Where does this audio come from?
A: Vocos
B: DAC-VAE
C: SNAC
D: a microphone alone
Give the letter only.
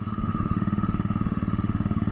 B